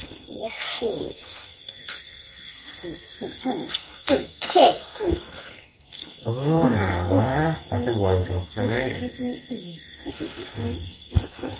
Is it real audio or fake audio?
fake